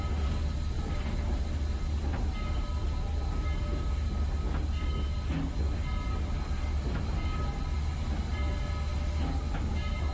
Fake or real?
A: real